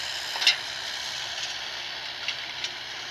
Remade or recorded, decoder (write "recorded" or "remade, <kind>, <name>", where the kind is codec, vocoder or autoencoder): recorded